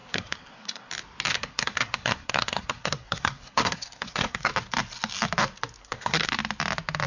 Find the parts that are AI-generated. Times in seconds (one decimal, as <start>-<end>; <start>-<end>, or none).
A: 0.0-0.9; 1.3-4.5; 5.8-6.3